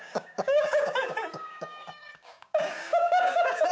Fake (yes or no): yes